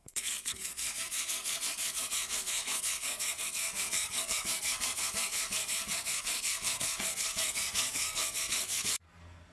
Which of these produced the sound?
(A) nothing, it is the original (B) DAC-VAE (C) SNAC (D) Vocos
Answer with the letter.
C